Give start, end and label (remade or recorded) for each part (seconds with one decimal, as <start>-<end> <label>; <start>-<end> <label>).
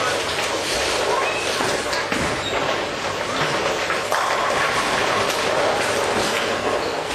0.0-6.2 recorded; 6.2-7.1 remade